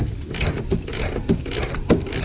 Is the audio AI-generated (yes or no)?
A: no